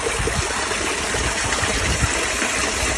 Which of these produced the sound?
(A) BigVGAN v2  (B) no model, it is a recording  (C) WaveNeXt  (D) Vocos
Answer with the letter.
B